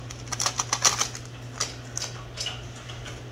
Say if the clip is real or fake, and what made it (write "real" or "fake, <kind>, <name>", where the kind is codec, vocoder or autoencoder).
real